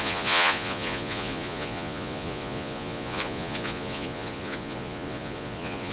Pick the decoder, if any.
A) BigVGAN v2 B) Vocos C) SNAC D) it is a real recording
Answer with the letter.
B